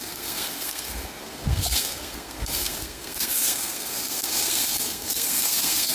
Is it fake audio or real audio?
fake